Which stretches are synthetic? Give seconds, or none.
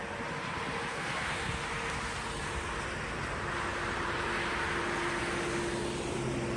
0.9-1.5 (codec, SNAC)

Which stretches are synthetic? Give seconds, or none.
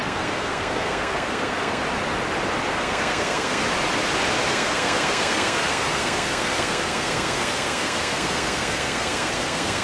0.0-1.8 (codec, SNAC); 2.7-3.6; 4.5-9.8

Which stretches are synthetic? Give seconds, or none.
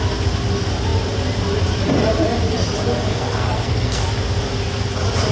3.1-4.1 (codec, SNAC)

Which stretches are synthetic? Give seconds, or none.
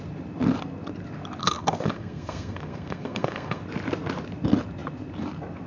1.4-3.6 (codec, SNAC)